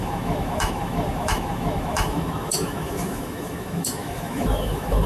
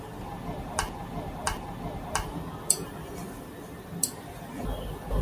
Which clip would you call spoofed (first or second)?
first